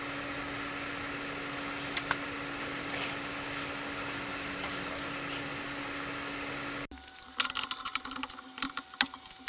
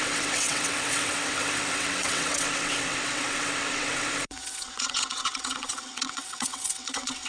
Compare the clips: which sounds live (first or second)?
first